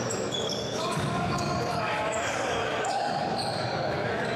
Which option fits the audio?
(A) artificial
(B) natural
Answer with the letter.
A